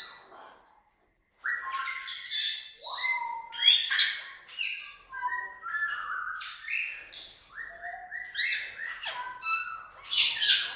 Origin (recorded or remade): recorded